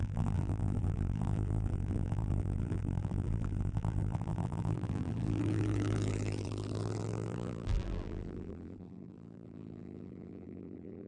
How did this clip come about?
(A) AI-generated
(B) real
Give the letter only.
A